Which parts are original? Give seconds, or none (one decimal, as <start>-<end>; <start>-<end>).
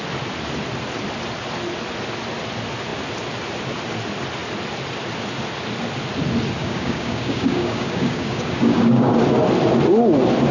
0.0-6.6; 9.1-10.5